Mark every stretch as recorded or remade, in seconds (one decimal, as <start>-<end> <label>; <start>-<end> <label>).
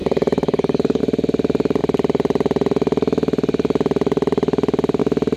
0.0-1.0 remade; 1.0-5.4 recorded